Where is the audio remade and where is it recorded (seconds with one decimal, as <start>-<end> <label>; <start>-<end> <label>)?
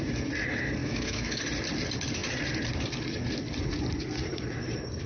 0.0-0.8 recorded; 0.8-1.4 remade; 1.4-5.1 recorded